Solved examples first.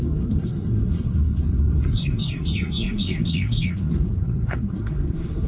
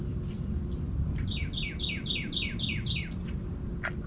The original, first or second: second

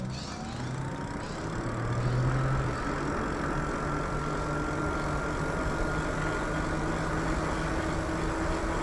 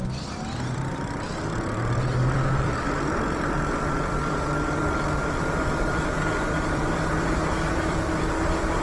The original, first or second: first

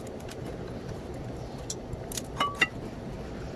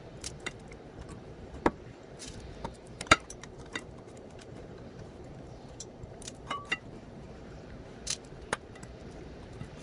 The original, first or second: first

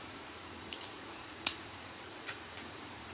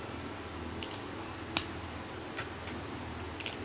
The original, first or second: second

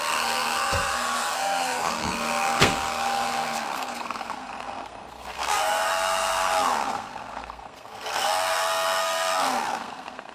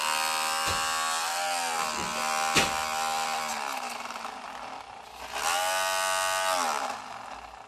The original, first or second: second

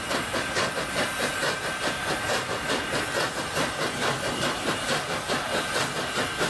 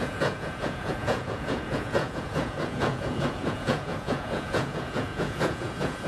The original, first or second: first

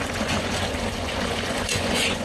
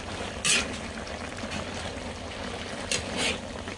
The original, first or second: second